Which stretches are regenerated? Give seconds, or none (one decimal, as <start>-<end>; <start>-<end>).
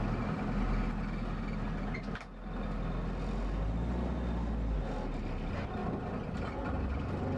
none